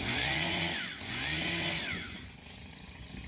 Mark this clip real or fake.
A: fake